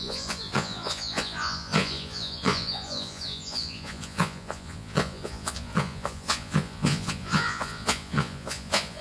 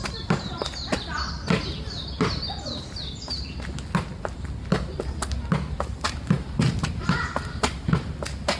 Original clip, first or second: second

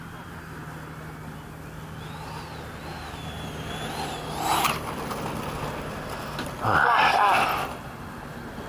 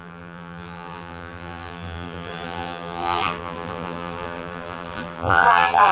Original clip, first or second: first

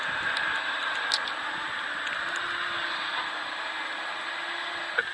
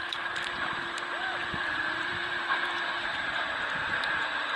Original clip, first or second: first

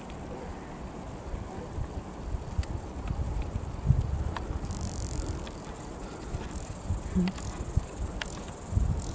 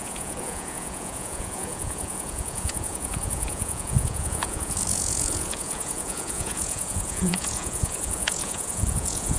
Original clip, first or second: first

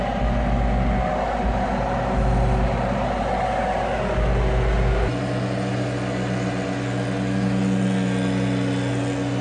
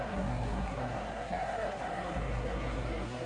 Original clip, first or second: first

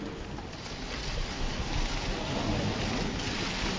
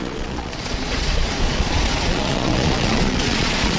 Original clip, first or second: first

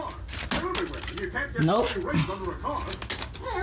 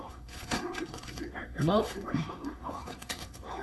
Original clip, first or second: first